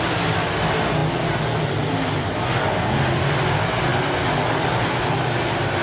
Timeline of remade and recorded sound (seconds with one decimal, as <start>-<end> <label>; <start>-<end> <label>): 0.0-5.8 recorded